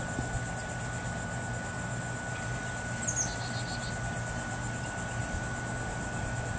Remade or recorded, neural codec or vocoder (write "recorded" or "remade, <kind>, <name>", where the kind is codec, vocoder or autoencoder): recorded